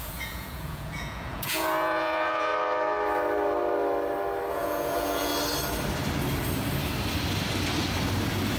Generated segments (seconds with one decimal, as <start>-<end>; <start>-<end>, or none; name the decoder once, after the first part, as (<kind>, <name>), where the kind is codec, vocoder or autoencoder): 0.0-2.5 (vocoder, Vocos); 4.5-5.3

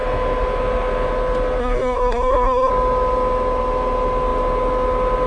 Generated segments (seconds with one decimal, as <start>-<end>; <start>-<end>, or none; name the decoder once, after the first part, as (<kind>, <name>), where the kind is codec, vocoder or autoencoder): 1.6-2.7 (codec, SNAC)

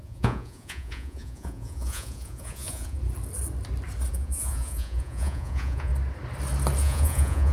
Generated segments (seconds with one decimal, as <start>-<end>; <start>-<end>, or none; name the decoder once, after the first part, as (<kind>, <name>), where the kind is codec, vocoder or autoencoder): 0.0-3.0 (vocoder, Vocos); 4.1-5.9; 6.8-7.5